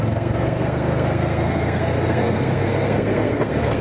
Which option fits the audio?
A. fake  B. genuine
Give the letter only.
A